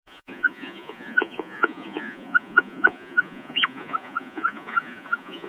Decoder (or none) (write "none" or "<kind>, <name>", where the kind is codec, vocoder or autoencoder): vocoder, Vocos